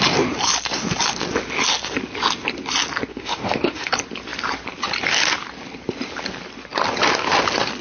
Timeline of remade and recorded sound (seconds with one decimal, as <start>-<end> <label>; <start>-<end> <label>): 0.0-3.1 recorded; 3.1-3.9 remade; 3.9-7.8 recorded

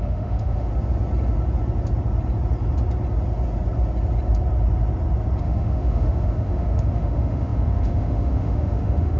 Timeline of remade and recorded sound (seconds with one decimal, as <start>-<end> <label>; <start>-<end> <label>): 0.0-0.7 remade; 0.7-5.4 recorded; 5.4-9.2 remade